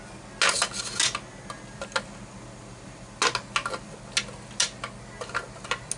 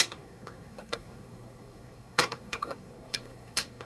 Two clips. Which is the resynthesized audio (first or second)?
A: second